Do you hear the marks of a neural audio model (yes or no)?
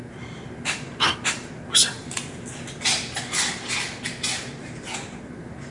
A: no